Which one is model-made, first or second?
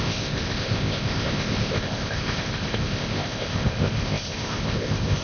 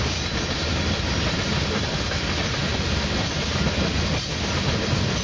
first